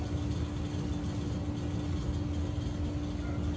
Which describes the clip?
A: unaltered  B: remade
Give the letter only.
A